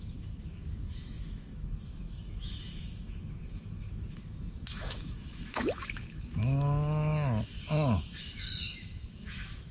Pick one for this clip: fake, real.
fake